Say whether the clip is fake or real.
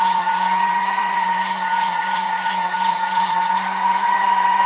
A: fake